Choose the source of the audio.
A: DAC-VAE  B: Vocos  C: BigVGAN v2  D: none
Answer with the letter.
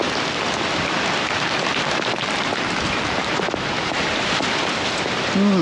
C